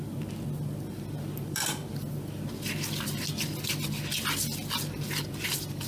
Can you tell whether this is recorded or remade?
recorded